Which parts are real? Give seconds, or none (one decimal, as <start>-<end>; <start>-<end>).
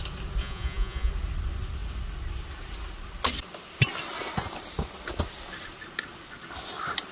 0.0-0.4; 1.1-7.1